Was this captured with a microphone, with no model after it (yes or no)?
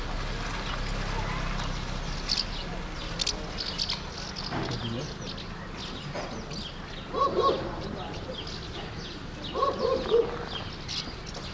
yes